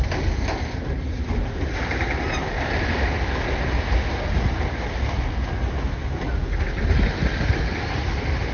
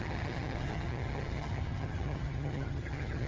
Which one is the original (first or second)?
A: first